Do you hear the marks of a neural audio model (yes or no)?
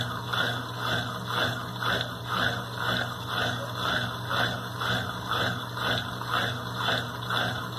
no